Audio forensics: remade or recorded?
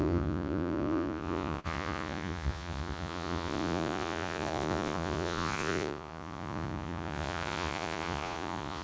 remade